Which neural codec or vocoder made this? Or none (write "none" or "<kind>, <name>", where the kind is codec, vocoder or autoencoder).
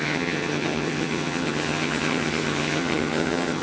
vocoder, HiFi-GAN